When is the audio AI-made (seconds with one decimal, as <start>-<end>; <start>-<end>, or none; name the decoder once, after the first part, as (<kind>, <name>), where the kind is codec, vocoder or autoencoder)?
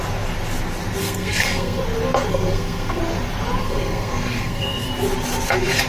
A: 1.0-1.8 (codec, SNAC); 2.3-3.0; 3.6-4.9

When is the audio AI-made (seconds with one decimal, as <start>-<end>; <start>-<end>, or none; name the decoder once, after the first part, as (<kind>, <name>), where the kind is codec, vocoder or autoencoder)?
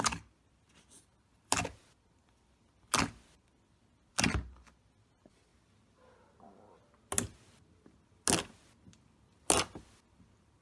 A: none